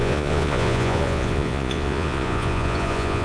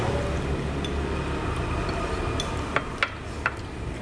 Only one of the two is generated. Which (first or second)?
first